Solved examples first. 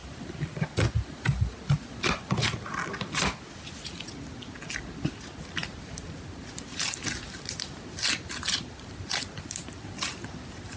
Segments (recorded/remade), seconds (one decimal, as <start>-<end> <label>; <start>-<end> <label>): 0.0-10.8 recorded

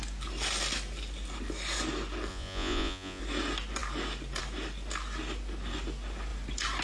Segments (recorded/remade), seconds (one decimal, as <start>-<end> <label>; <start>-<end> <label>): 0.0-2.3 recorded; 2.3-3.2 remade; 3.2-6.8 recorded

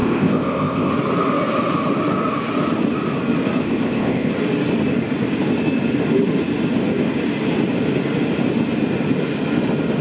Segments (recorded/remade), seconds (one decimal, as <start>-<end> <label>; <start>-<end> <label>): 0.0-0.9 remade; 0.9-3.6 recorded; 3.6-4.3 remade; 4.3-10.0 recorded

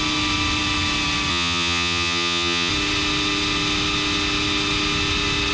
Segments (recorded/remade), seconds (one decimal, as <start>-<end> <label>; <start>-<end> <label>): 0.0-1.3 recorded; 1.3-2.7 remade; 2.7-5.5 recorded

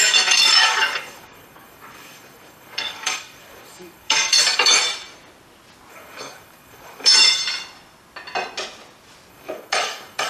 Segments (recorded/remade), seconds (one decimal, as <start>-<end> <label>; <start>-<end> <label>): 0.0-4.8 remade; 4.8-5.9 recorded; 5.9-7.4 remade; 7.4-9.3 recorded; 9.3-10.3 remade